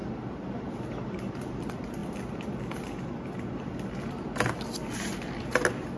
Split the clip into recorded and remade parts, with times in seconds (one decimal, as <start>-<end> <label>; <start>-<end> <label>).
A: 0.0-6.0 recorded